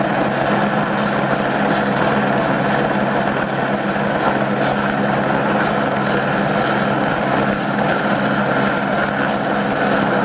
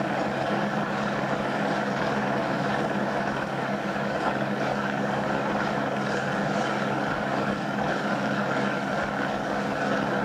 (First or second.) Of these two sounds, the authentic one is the first